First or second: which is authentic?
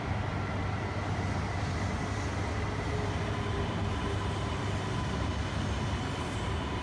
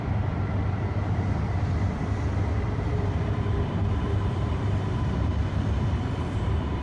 first